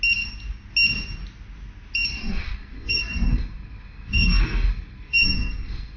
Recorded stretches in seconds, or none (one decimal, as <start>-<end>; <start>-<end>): 0.0-2.1